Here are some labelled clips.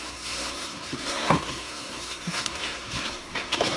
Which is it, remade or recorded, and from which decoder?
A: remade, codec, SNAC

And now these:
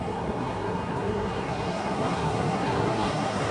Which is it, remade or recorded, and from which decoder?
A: remade, codec, SNAC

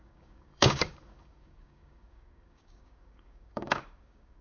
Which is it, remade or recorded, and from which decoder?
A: remade, codec, DAC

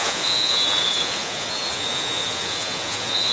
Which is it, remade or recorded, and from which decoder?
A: remade, vocoder, Vocos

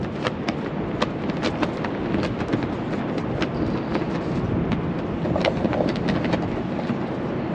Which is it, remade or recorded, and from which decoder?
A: recorded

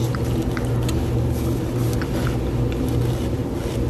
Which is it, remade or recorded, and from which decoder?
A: recorded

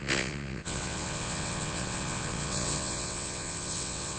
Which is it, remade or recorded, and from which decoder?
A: remade, vocoder, WaveNeXt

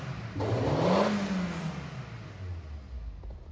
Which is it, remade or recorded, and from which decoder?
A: recorded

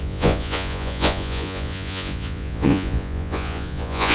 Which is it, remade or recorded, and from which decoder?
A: remade, vocoder, Vocos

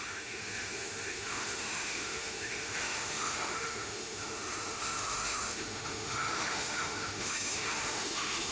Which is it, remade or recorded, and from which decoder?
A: remade, autoencoder, DAC-VAE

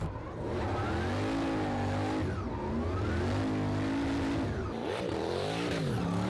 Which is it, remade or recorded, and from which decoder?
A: recorded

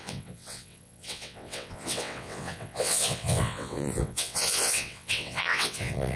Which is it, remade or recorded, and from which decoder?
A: remade, vocoder, WaveNeXt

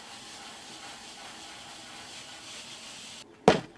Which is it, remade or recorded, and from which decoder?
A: recorded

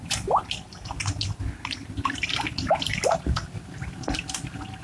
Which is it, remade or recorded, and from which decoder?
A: recorded